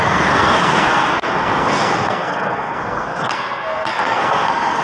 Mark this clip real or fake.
fake